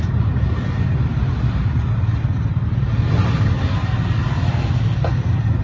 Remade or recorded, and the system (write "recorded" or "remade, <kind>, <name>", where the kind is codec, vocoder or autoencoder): recorded